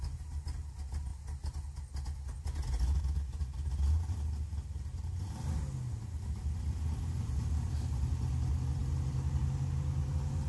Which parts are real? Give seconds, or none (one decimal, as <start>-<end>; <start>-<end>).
0.0-10.5